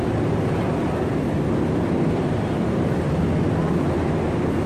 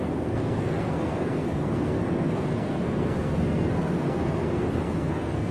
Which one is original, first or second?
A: first